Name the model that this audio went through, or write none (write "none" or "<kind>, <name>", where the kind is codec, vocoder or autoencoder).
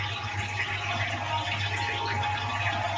none